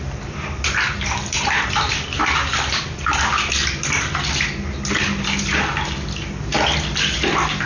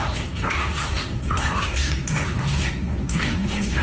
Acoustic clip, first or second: first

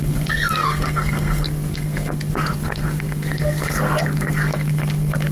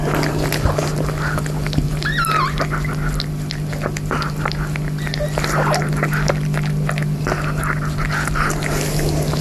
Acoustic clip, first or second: second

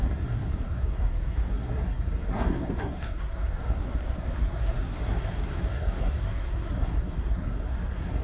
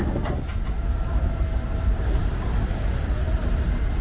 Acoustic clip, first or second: second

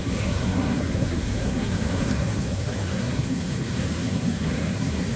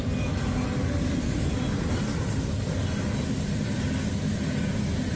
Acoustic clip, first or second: second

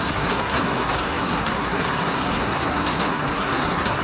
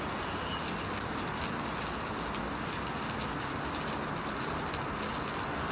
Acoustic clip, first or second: second